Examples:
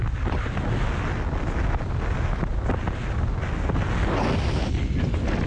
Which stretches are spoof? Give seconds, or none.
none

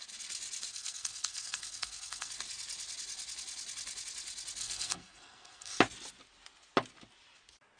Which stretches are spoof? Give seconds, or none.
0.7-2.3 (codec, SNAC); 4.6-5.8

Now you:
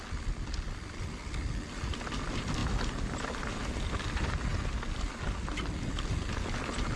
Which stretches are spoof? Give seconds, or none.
none